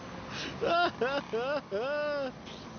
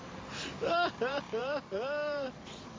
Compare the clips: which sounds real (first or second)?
first